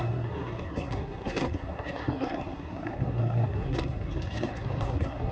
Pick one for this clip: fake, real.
fake